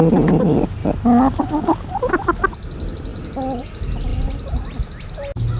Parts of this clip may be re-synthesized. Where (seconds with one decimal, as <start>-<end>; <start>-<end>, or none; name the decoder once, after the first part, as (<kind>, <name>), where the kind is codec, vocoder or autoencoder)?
none